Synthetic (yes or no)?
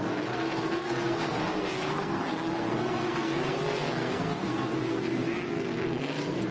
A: yes